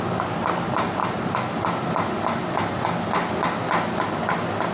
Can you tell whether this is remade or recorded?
recorded